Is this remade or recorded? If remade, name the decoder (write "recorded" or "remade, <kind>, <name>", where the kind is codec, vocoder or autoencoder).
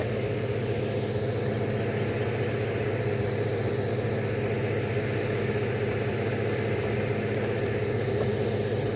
recorded